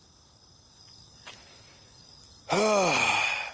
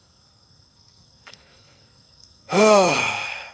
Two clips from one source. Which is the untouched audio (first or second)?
first